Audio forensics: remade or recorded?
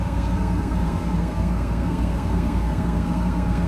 remade